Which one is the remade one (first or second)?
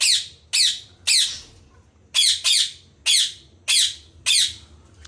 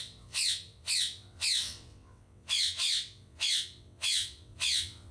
second